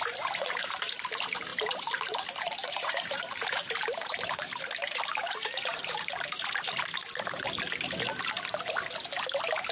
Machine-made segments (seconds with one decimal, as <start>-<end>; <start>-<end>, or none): 0.0-6.9